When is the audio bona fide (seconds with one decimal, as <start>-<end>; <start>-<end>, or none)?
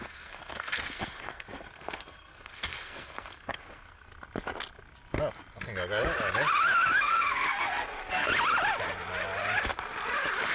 4.1-7.0; 8.3-10.5